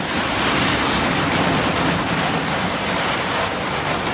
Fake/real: real